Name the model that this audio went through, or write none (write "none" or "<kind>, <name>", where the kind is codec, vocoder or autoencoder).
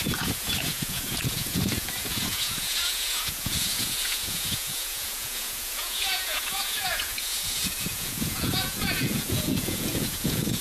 vocoder, Vocos